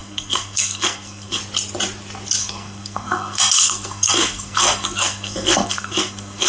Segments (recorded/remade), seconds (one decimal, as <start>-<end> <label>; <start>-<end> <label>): 0.0-1.4 remade; 1.4-2.4 recorded; 2.4-6.5 remade